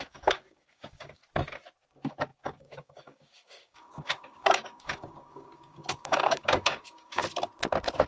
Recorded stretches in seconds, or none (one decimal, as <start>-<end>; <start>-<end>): 1.2-1.9; 7.2-8.1